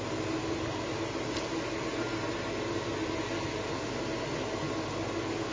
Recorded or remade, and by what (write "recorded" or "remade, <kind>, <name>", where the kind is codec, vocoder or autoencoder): recorded